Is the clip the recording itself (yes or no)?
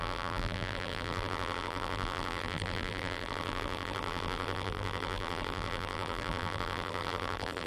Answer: no